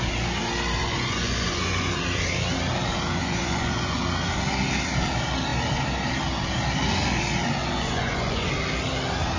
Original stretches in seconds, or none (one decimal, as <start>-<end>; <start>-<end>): 0.0-0.8; 1.9-3.2; 4.0-7.6; 8.5-9.4